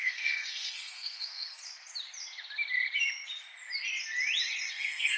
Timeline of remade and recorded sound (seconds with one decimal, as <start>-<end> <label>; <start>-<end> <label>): 0.0-1.6 remade; 1.6-4.7 recorded; 4.7-5.2 remade